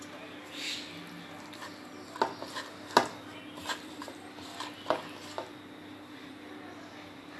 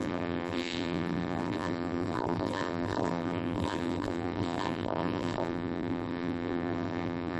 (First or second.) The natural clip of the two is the first